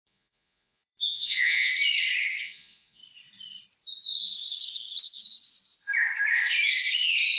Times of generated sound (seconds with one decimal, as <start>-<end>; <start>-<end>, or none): 0.0-1.7; 2.4-3.0